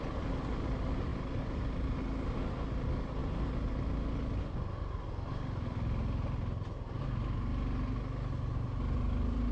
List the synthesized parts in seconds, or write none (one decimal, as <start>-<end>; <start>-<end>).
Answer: 1.1-2.0

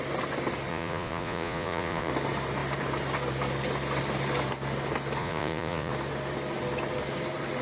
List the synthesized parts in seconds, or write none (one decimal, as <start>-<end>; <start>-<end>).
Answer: 0.7-2.1; 5.2-5.9

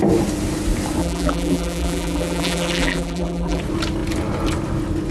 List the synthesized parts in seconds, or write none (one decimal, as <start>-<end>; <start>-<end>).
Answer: 1.0-3.6

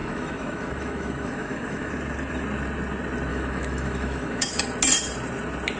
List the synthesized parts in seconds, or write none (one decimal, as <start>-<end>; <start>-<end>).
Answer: 0.0-1.9; 3.3-4.6

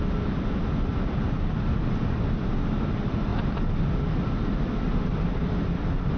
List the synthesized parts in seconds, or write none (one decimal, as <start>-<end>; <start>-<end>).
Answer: 0.9-2.7; 3.3-6.2